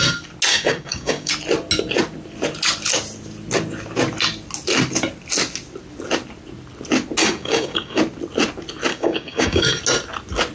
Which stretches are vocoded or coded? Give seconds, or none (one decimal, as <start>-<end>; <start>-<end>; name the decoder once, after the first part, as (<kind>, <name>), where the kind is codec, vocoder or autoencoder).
0.5-1.3 (codec, DAC); 7.2-8.0; 8.9-9.8